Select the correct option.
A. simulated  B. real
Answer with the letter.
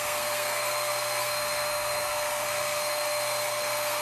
A